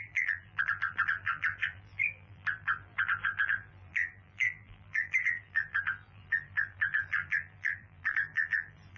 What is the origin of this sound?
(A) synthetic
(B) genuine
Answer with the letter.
A